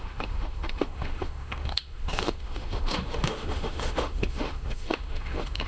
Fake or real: fake